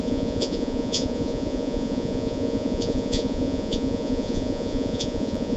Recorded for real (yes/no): no